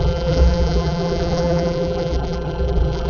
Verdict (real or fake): fake